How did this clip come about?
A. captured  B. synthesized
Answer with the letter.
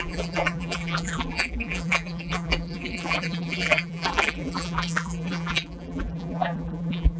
B